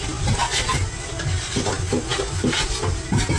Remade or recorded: recorded